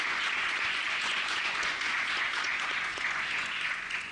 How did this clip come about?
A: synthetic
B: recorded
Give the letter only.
A